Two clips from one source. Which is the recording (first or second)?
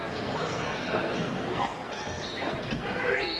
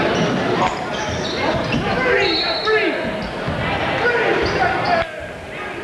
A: second